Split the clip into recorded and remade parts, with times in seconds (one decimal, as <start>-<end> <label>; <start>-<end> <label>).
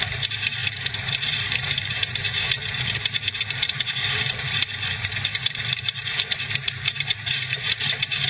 0.0-8.3 remade